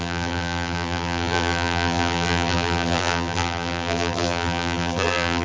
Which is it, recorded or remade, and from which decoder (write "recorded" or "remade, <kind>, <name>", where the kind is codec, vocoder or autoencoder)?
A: remade, vocoder, BigVGAN v2